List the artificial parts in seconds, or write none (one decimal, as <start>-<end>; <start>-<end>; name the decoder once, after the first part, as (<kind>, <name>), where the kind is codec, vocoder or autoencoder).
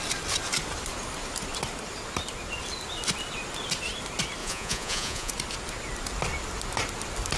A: 4.4-5.3 (vocoder, Vocos)